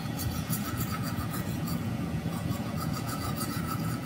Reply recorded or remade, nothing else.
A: remade